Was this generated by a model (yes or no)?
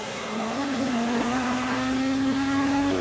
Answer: yes